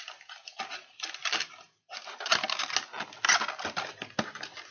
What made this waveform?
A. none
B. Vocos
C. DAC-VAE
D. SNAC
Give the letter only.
A